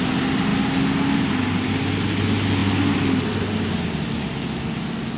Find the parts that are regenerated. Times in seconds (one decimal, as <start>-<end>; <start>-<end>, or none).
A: none